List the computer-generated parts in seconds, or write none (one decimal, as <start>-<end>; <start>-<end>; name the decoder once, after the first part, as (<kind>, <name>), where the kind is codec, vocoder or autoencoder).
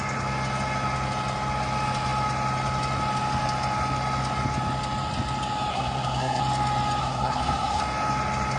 5.7-6.4 (codec, SNAC); 7.0-7.8